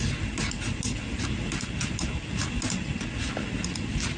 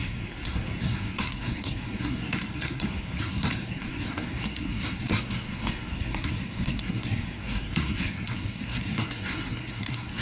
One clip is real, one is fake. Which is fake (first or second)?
second